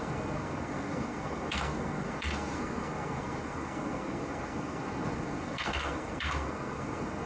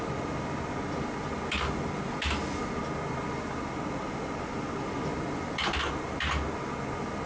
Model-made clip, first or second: first